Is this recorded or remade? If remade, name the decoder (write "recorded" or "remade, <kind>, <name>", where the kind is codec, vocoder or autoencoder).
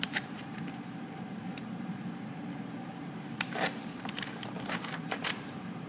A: remade, vocoder, BigVGAN v2